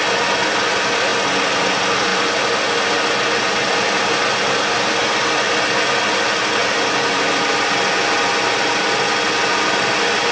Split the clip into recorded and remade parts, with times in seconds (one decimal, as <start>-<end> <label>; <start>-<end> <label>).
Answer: 0.0-10.3 recorded